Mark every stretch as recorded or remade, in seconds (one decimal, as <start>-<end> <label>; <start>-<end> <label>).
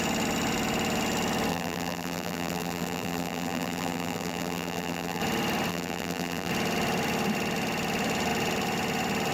0.0-1.5 recorded; 1.5-5.2 remade; 5.2-5.7 recorded; 5.7-6.5 remade; 6.5-9.3 recorded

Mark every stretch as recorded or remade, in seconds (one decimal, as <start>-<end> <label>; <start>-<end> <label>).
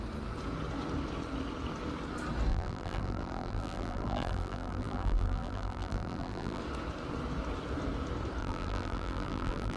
0.0-2.5 recorded; 2.5-6.6 remade; 6.6-8.4 recorded; 8.4-9.8 remade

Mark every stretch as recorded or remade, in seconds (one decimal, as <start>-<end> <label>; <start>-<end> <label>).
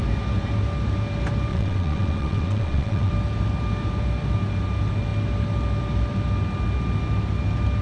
0.0-1.5 recorded; 1.5-3.1 remade; 3.1-7.8 recorded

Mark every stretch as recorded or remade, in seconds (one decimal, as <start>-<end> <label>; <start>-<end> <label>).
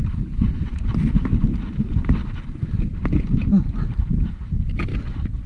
0.0-0.9 remade; 0.9-1.4 recorded; 1.4-2.2 remade; 2.2-3.6 recorded; 3.6-4.9 remade; 4.9-5.5 recorded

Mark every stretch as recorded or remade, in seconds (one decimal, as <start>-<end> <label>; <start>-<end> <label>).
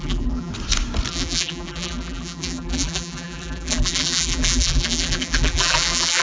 0.0-0.5 remade; 0.5-1.1 recorded; 1.1-6.2 remade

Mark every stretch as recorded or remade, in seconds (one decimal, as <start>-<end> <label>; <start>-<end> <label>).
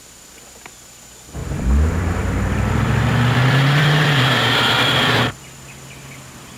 0.0-1.4 recorded; 1.4-5.4 remade; 5.4-6.6 recorded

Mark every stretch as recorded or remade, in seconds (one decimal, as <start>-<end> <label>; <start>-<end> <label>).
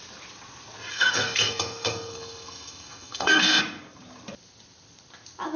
0.0-0.9 recorded; 0.9-3.6 remade; 3.6-5.6 recorded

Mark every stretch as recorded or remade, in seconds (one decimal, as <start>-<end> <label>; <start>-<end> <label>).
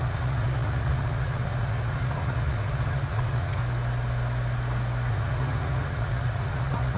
0.0-3.6 remade; 3.6-5.1 recorded; 5.1-7.0 remade